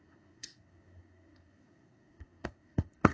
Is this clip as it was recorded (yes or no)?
no